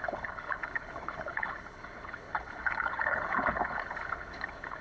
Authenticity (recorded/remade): remade